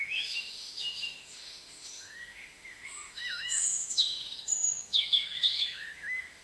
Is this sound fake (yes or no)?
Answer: yes